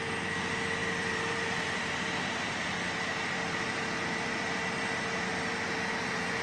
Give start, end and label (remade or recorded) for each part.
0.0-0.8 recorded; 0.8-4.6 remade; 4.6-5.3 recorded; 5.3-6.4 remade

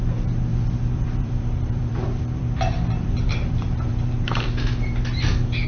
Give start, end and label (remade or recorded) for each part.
0.0-0.5 recorded; 0.5-3.9 remade; 3.9-5.7 recorded

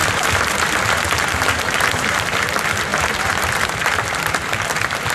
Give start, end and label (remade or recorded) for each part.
0.0-0.6 remade; 0.6-2.9 recorded; 2.9-3.5 remade; 3.5-5.1 recorded

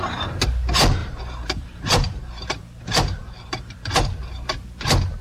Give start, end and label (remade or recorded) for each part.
0.0-1.0 recorded; 1.0-3.8 remade; 3.8-5.2 recorded

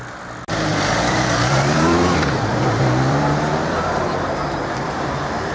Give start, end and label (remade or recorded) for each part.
0.0-0.7 recorded; 0.7-4.0 remade; 4.0-5.5 recorded

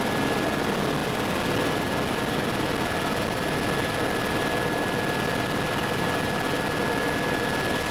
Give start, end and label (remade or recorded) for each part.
0.0-7.9 recorded

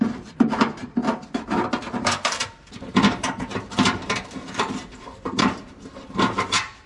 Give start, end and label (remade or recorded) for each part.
0.0-1.0 remade; 1.0-1.9 recorded; 1.9-6.9 remade